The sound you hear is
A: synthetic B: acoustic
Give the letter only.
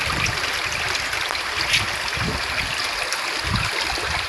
B